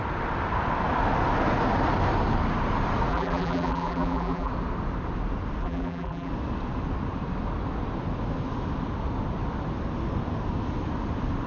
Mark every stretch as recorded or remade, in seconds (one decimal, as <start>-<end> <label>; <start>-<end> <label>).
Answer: 0.0-3.1 recorded; 3.1-4.5 remade; 4.5-5.6 recorded; 5.6-6.3 remade; 6.3-11.5 recorded